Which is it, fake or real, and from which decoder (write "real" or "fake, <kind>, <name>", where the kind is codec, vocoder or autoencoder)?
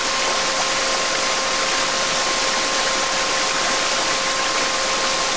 real